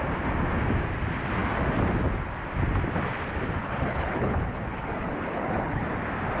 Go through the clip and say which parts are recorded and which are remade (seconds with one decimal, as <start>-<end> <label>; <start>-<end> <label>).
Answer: 0.0-3.6 recorded; 3.6-5.8 remade; 5.8-6.4 recorded